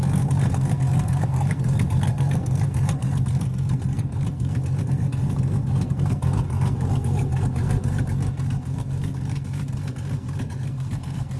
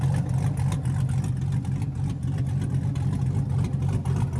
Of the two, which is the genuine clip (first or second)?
second